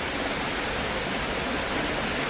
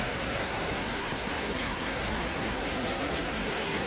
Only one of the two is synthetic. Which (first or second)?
second